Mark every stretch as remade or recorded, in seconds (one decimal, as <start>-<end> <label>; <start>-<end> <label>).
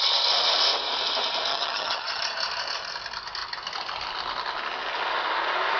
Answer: 0.0-1.5 recorded; 1.5-2.2 remade; 2.2-5.8 recorded